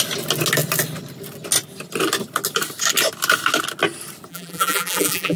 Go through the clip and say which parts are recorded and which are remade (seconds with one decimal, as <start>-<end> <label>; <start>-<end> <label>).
0.0-4.3 recorded; 4.3-5.4 remade